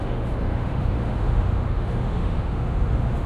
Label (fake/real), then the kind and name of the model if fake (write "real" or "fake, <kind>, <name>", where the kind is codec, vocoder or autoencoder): fake, autoencoder, DAC-VAE